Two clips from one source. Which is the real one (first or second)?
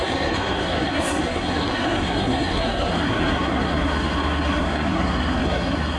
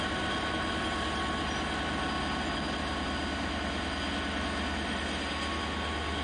second